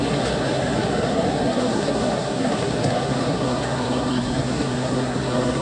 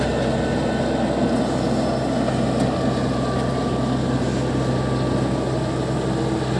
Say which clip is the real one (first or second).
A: second